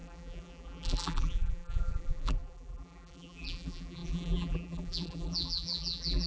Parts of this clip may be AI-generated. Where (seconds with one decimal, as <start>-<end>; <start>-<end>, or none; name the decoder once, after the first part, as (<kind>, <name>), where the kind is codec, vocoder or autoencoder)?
0.0-6.3 (vocoder, BigVGAN v2)